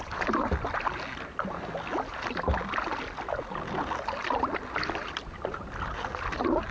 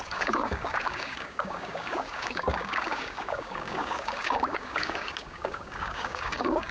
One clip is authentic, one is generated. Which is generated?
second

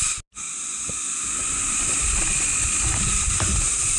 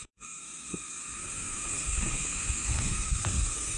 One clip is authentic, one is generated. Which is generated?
second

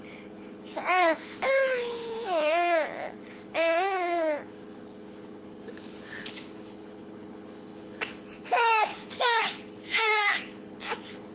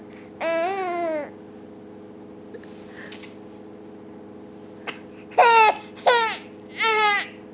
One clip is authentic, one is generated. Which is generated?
first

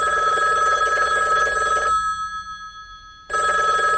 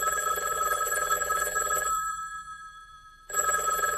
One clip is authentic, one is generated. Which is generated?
second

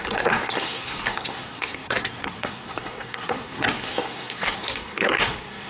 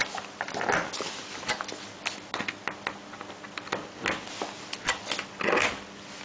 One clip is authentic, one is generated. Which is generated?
first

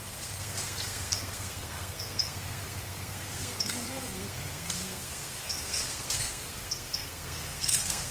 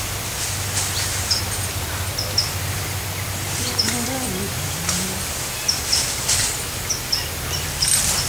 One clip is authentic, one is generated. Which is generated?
first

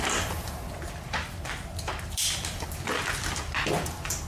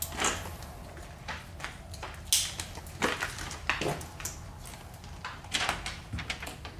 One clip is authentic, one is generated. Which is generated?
first